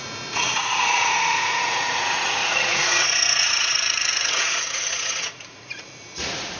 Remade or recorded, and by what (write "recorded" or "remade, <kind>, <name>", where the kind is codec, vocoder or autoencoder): remade, vocoder, Vocos